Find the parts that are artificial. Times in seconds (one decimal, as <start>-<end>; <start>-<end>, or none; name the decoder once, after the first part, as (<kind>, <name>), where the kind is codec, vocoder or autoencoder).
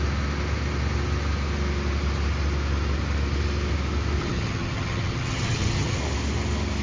4.2-6.0 (vocoder, HiFi-GAN)